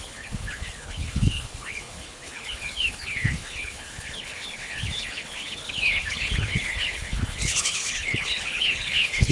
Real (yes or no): no